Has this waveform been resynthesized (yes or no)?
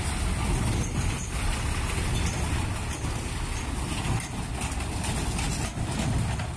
no